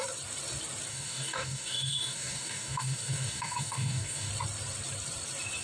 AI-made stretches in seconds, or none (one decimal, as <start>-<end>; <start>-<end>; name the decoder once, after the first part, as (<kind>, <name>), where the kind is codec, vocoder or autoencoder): 0.9-4.3 (codec, DAC)